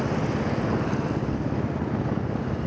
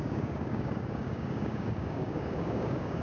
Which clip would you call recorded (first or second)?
first